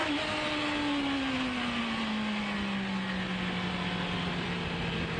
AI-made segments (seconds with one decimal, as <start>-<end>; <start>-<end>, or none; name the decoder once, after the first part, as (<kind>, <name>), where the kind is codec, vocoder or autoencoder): none